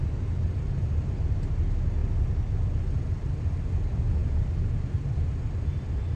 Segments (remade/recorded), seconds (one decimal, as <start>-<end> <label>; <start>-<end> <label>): 0.0-6.2 recorded